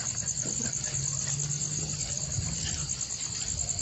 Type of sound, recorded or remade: recorded